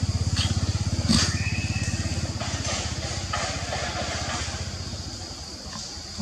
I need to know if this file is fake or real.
real